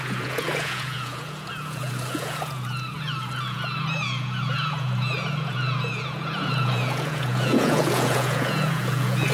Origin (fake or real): fake